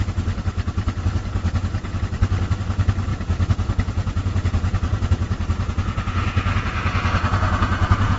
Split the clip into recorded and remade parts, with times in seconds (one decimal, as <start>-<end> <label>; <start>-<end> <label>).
0.0-1.3 recorded; 1.3-2.0 remade; 2.0-3.1 recorded; 3.1-8.2 remade